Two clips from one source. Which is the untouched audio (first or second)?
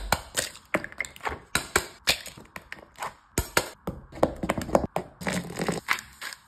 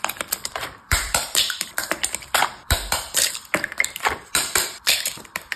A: first